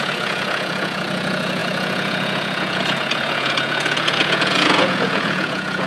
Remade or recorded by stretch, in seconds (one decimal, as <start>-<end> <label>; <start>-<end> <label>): 0.0-5.9 remade